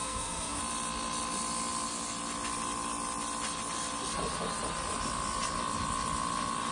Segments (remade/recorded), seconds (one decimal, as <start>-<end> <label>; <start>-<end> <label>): 0.0-0.6 remade; 0.6-6.7 recorded